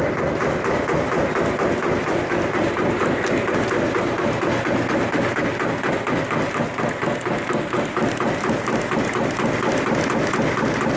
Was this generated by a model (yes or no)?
no